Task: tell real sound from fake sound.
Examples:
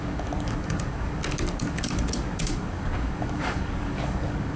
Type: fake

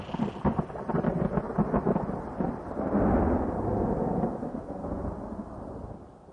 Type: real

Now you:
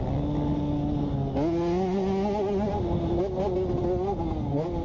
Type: real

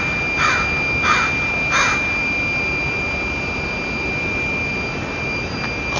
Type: real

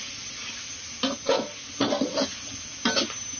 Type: real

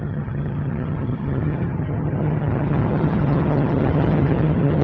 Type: fake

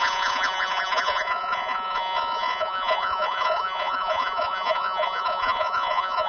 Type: fake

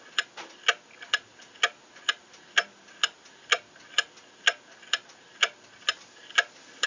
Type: real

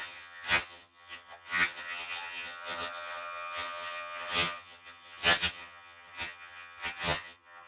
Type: fake